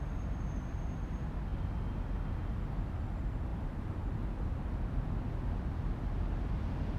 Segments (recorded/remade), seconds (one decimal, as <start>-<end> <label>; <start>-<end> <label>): 0.0-3.5 recorded; 3.5-4.5 remade; 4.5-7.0 recorded